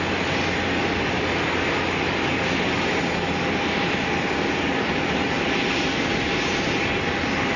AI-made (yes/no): no